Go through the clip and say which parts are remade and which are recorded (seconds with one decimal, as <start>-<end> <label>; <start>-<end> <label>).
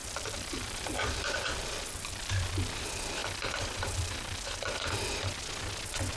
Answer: 0.0-1.5 remade; 1.5-3.2 recorded; 3.2-5.4 remade; 5.4-6.2 recorded